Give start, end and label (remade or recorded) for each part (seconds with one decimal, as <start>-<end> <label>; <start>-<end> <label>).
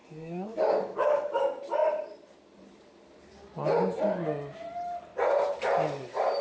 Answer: 0.0-1.4 remade; 1.4-6.4 recorded